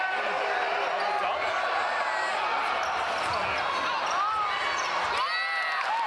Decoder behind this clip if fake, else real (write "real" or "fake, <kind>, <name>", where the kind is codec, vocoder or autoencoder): real